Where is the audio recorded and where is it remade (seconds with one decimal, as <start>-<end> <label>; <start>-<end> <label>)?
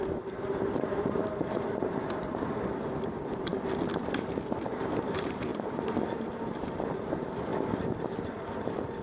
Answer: 0.0-3.5 remade; 3.5-4.0 recorded; 4.0-7.5 remade; 7.5-8.3 recorded; 8.3-9.0 remade